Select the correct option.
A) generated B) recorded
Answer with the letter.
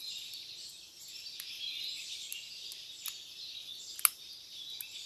B